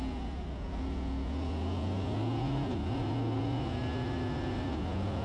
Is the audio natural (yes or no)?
yes